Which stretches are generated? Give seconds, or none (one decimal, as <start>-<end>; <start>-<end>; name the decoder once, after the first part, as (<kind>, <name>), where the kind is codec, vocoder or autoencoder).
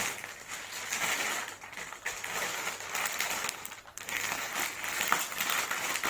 3.9-4.5 (codec, SNAC)